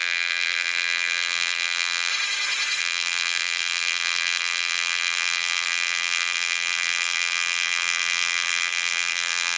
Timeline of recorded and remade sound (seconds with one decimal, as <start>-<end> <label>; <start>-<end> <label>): 0.0-2.1 remade; 2.1-2.8 recorded; 2.8-9.6 remade